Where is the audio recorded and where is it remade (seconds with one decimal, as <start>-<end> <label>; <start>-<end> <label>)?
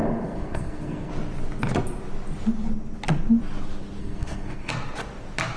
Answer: 0.0-1.1 remade; 1.1-4.0 recorded; 4.0-4.7 remade; 4.7-5.6 recorded